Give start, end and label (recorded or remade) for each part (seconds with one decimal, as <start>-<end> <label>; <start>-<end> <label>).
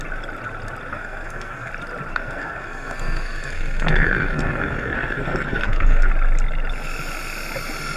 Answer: 0.0-0.9 recorded; 0.9-1.7 remade; 1.7-2.1 recorded; 2.1-6.1 remade; 6.1-8.0 recorded